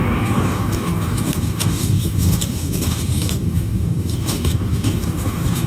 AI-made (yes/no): yes